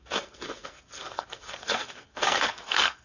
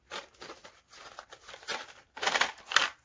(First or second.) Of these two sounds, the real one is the second